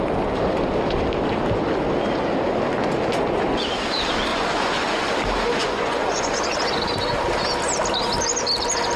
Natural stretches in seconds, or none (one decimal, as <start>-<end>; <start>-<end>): 0.0-4.3; 5.1-5.6; 6.3-9.0